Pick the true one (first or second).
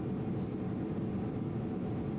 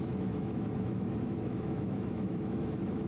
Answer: first